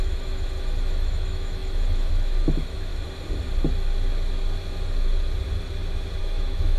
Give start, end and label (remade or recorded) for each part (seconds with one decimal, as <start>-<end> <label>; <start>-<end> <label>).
0.0-2.9 remade; 2.9-6.2 recorded; 6.2-6.8 remade